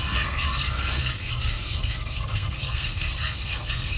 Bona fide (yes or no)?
no